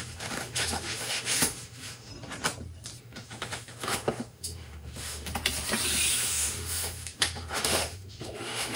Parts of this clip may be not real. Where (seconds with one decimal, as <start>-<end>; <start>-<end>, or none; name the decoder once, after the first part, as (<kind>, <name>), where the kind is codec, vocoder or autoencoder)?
0.0-2.1 (autoencoder, DAC-VAE); 3.0-5.3; 6.1-8.8